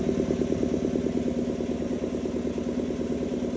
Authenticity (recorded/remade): recorded